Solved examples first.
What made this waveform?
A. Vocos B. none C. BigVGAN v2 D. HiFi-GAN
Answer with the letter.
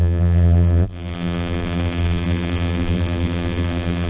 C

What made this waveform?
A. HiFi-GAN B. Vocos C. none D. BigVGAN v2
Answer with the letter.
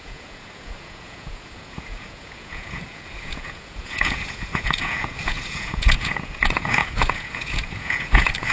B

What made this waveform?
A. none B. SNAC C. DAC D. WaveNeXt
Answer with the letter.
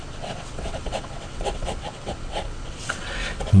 D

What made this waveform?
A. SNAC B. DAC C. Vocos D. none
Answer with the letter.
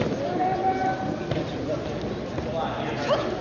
D